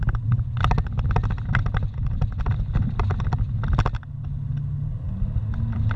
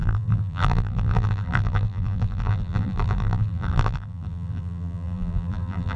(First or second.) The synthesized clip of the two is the second